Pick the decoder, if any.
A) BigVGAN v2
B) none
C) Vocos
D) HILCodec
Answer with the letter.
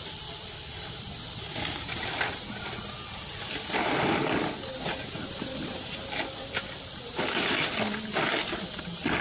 B